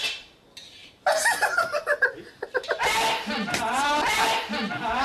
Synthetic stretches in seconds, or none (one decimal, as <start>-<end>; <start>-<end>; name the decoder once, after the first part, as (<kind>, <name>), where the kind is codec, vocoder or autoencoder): none